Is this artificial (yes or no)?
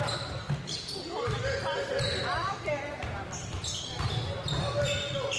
no